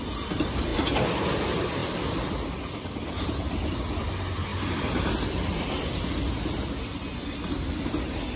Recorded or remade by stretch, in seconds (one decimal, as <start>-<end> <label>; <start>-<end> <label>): 0.0-1.8 recorded; 1.8-2.5 remade; 2.5-4.5 recorded; 4.5-5.6 remade; 5.6-8.4 recorded